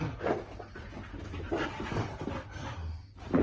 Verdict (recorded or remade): recorded